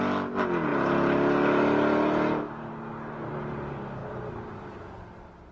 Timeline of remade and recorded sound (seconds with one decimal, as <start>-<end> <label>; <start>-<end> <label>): 0.0-5.5 recorded